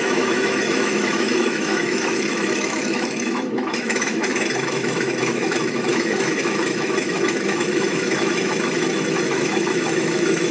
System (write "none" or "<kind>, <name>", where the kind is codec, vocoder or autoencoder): autoencoder, DAC-VAE